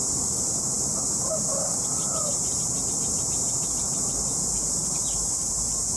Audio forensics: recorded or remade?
recorded